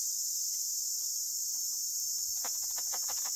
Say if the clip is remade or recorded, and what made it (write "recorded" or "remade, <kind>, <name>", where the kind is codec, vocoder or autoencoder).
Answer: recorded